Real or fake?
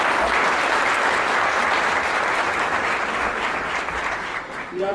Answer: real